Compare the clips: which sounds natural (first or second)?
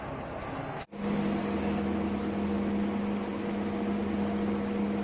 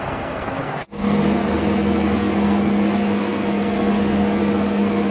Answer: first